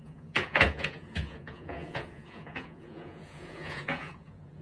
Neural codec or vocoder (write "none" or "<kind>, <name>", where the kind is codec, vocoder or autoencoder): vocoder, Vocos